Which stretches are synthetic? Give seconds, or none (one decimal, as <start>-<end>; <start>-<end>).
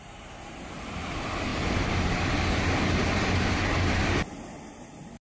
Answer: none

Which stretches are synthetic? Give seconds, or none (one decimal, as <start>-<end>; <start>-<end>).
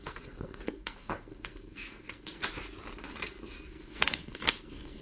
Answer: 0.0-2.4; 3.0-5.0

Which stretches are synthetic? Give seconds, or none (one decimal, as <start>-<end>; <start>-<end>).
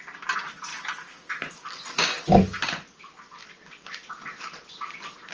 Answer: none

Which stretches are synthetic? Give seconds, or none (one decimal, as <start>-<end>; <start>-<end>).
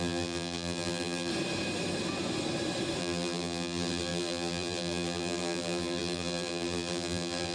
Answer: 0.0-1.3; 3.0-7.5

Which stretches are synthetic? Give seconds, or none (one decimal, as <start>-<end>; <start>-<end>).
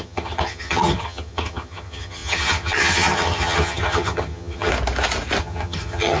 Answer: 0.0-4.7; 5.4-6.2